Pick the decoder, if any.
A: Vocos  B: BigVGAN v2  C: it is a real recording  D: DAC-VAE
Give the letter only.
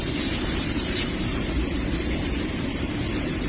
C